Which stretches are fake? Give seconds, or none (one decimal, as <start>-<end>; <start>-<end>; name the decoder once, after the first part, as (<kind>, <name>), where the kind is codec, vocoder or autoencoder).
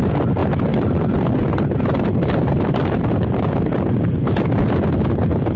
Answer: 0.4-1.1 (vocoder, BigVGAN v2); 2.1-4.0